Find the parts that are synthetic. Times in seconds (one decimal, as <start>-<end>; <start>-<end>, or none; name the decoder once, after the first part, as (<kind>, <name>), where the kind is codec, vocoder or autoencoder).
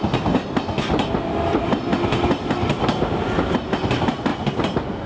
none